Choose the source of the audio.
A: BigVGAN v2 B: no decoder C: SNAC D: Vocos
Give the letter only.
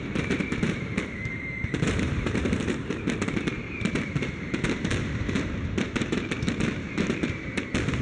A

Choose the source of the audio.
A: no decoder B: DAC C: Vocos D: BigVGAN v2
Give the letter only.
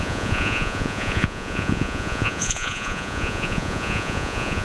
C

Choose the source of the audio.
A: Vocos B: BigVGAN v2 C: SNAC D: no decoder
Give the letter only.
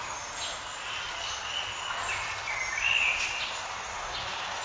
D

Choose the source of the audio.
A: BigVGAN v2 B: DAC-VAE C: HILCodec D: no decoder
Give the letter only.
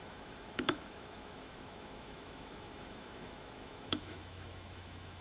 B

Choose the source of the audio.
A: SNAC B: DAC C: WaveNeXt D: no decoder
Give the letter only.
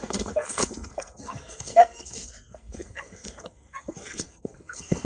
A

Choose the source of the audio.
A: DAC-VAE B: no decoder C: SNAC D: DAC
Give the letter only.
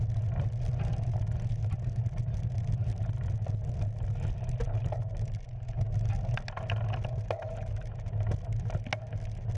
B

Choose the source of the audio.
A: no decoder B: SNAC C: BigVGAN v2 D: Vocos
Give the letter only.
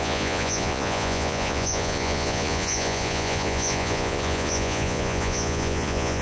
D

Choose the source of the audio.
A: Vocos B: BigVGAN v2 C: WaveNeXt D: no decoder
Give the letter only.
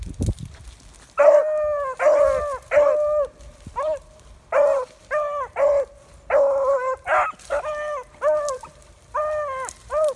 D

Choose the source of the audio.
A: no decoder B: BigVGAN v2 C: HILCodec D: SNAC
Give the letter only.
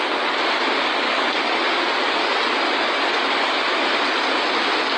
A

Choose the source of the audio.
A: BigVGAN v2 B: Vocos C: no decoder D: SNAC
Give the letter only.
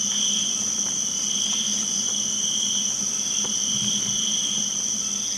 C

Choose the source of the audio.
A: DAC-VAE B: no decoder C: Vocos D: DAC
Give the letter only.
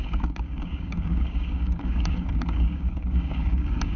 D